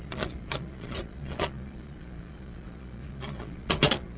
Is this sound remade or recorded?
remade